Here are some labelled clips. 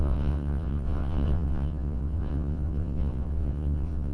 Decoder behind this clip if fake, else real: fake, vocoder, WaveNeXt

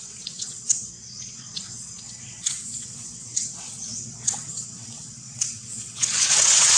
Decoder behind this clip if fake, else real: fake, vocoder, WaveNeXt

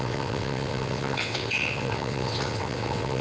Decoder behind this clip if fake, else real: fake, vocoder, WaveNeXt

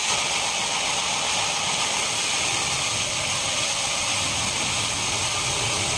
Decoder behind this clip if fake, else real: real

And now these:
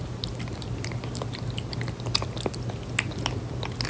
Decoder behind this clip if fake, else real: real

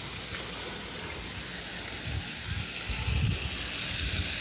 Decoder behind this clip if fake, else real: real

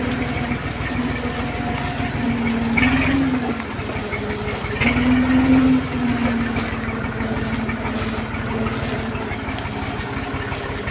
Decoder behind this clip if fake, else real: real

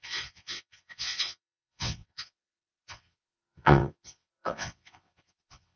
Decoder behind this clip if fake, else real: fake, vocoder, WaveNeXt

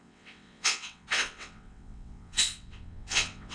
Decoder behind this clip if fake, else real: fake, vocoder, WaveNeXt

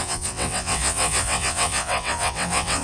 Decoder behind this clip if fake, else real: fake, vocoder, WaveNeXt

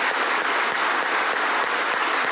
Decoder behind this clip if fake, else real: real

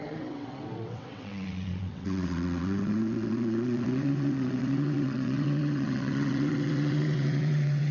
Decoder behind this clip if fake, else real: fake, vocoder, WaveNeXt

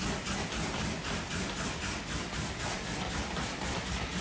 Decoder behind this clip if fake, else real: real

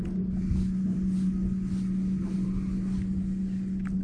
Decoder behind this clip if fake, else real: real